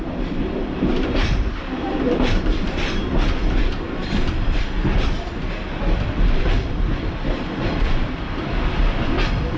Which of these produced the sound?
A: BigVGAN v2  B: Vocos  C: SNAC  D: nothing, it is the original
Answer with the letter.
A